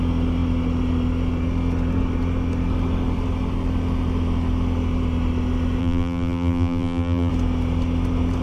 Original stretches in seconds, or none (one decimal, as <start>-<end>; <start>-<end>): 0.0-5.8; 7.3-8.4